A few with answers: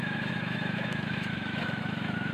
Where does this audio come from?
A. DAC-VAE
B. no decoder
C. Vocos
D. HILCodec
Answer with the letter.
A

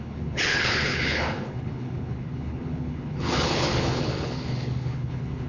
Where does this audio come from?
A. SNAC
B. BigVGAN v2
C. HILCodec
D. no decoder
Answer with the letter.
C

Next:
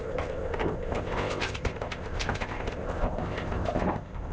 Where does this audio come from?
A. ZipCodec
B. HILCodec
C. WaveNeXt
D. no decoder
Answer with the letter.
A